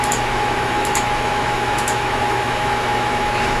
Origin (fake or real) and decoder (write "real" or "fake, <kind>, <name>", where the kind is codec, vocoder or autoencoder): fake, autoencoder, DAC-VAE